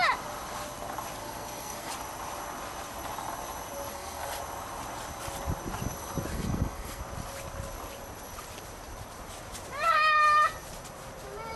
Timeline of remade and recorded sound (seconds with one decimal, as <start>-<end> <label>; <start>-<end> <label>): 0.0-1.2 recorded; 1.2-1.9 remade; 1.9-3.9 recorded; 3.9-4.4 remade; 4.4-6.3 recorded; 6.3-7.0 remade; 7.0-11.6 recorded